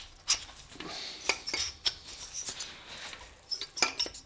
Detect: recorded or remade recorded